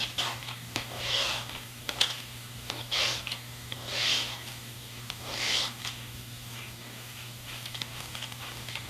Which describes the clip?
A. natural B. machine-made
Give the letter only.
B